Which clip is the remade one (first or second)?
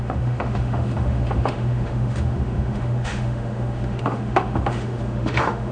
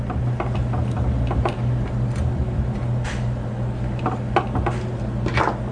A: first